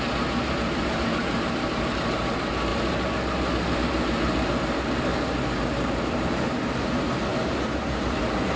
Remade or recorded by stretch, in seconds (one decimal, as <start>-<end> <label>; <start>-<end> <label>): 0.0-2.7 remade; 2.7-3.7 recorded; 3.7-8.6 remade